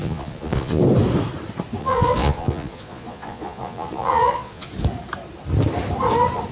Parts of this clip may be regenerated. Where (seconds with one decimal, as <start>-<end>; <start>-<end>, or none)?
0.0-0.8; 1.8-4.7